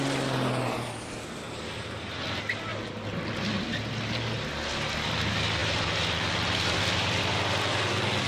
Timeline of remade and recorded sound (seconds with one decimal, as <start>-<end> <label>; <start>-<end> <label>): 0.0-8.3 recorded